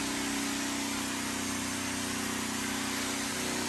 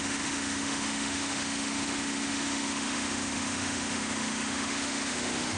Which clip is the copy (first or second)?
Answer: second